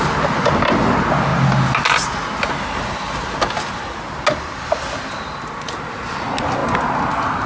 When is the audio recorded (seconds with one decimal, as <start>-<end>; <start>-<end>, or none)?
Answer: 0.0-7.5